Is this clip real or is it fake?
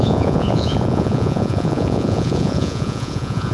fake